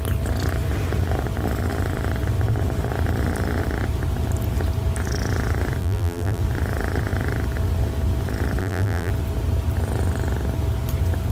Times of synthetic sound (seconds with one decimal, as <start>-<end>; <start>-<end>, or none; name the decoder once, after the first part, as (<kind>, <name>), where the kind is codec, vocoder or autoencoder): 5.8-6.4 (vocoder, BigVGAN v2); 8.6-9.1